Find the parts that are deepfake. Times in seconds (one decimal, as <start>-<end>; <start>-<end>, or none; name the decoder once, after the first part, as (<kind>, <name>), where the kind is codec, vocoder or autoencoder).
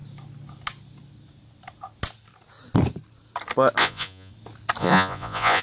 3.8-4.3 (vocoder, Vocos); 4.8-5.6